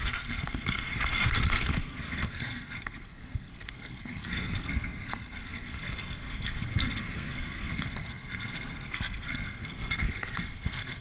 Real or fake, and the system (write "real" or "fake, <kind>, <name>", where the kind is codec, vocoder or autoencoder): fake, codec, SNAC